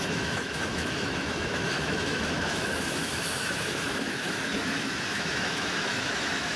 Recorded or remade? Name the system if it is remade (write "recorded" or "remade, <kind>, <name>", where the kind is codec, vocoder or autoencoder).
remade, autoencoder, DAC-VAE